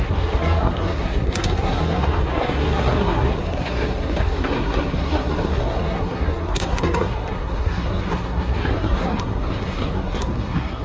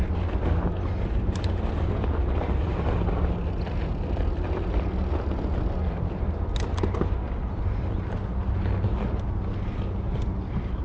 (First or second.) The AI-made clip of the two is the first